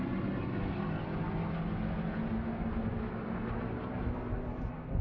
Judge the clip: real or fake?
real